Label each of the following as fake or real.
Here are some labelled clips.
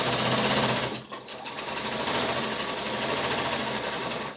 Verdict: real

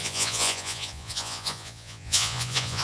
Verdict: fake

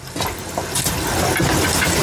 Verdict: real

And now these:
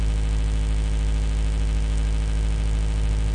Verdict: real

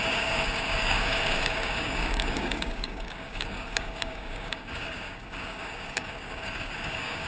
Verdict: fake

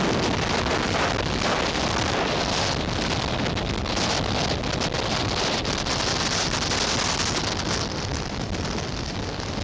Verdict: real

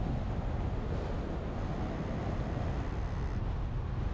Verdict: real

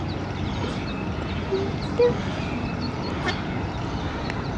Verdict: real